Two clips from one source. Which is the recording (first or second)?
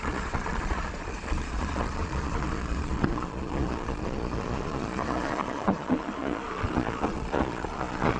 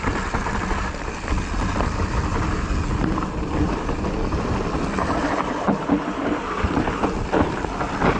second